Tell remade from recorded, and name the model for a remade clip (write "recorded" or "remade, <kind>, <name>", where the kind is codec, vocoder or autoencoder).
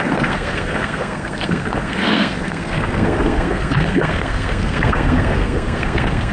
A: remade, codec, SNAC